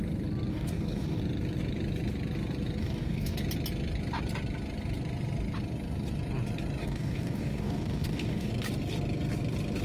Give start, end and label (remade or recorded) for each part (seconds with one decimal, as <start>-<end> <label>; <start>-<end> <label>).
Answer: 0.0-0.5 recorded; 0.5-1.2 remade; 1.2-2.8 recorded; 2.8-3.4 remade; 3.4-6.8 recorded; 6.8-8.5 remade; 8.5-9.8 recorded